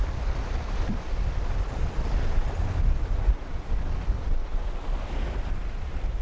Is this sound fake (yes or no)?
no